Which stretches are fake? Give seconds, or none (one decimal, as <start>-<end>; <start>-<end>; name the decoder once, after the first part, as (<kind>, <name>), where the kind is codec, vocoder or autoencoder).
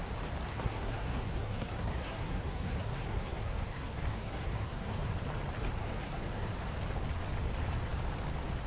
0.5-5.1 (codec, SNAC); 5.8-6.5